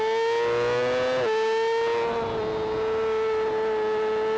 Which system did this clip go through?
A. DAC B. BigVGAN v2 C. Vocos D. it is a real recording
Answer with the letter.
D